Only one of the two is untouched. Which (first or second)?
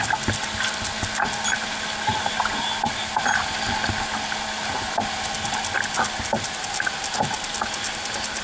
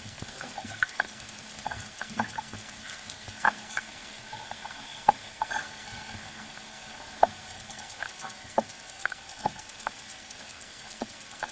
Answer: first